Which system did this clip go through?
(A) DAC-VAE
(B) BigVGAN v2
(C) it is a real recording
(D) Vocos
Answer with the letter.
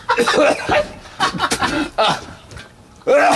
C